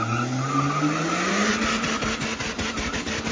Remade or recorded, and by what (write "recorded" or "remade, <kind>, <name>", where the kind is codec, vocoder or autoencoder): recorded